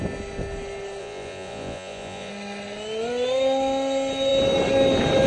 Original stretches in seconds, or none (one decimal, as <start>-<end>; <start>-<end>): 0.0-1.0; 2.3-5.3